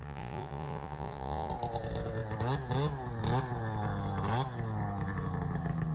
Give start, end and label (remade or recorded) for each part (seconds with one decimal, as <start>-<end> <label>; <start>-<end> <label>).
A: 0.0-1.5 remade; 1.5-5.9 recorded